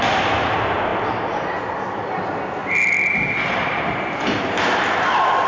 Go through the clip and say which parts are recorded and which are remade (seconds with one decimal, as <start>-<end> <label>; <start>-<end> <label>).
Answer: 0.0-5.5 recorded